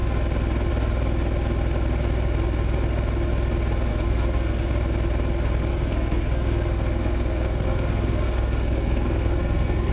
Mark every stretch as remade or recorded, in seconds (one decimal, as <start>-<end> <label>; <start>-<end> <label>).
0.0-3.9 recorded; 3.9-4.7 remade; 4.7-5.7 recorded; 5.7-9.9 remade